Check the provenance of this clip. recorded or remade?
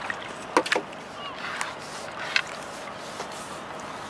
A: recorded